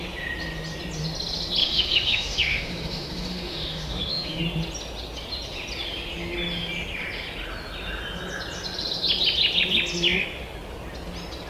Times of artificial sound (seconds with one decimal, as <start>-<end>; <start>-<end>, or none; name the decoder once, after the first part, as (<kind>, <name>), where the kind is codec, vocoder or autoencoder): 1.6-4.4 (autoencoder, DAC-VAE)